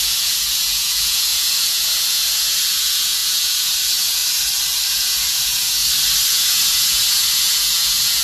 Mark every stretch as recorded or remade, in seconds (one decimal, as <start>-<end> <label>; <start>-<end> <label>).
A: 0.0-4.2 remade; 4.2-4.9 recorded; 4.9-5.8 remade; 5.8-6.3 recorded; 6.3-8.2 remade